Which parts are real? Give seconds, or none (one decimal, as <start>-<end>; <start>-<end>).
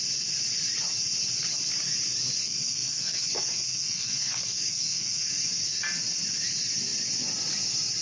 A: 0.0-2.4; 5.5-8.0